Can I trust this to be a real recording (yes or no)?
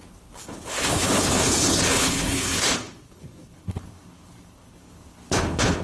no